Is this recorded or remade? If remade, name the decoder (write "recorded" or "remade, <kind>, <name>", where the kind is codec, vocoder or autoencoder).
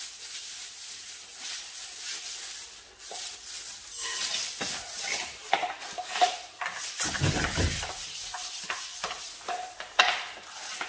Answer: recorded